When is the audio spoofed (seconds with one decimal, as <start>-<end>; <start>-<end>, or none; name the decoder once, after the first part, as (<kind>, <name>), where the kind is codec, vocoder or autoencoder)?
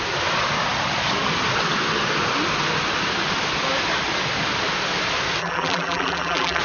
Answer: 5.4-6.6 (vocoder, BigVGAN v2)